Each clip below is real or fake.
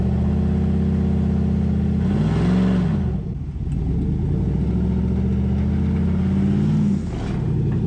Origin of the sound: real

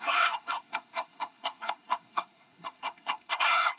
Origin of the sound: fake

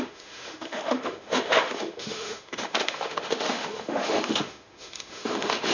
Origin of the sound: fake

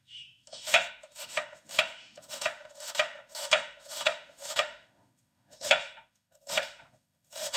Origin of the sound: fake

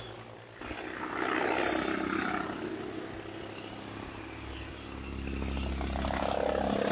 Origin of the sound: real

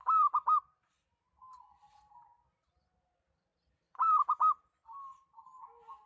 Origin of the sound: real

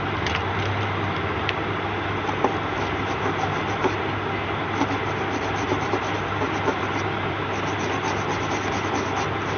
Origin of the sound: real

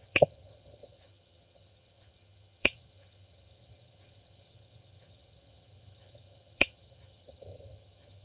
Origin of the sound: fake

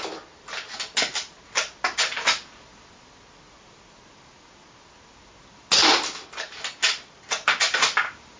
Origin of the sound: real